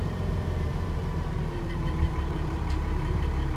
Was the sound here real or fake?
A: fake